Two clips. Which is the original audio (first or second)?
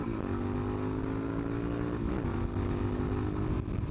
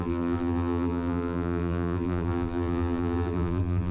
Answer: first